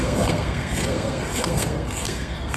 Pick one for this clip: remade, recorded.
remade